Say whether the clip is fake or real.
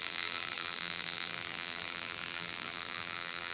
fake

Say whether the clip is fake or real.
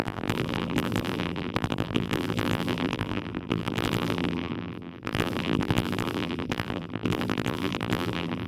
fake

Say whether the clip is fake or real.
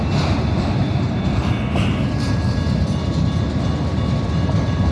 real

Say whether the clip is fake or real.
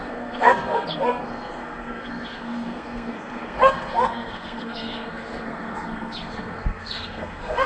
fake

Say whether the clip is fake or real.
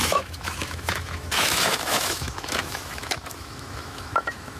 fake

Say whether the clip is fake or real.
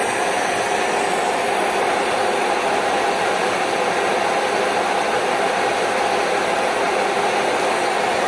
real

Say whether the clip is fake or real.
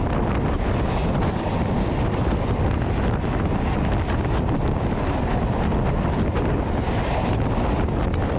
real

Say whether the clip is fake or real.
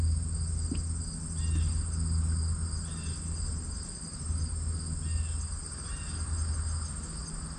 real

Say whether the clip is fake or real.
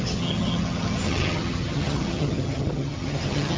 fake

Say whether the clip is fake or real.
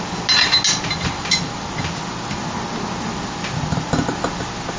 real